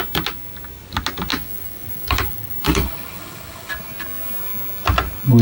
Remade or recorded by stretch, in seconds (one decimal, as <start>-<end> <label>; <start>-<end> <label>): 0.0-1.3 recorded; 1.3-3.7 remade; 3.7-5.4 recorded